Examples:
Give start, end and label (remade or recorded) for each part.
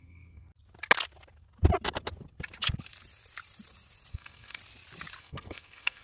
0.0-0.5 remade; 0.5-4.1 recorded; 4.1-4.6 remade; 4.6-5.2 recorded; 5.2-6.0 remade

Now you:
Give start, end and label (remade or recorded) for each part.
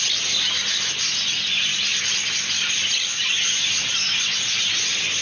0.0-5.2 recorded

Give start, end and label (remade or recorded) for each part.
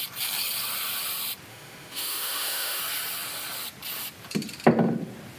0.0-1.5 recorded; 1.5-2.8 remade; 2.8-5.4 recorded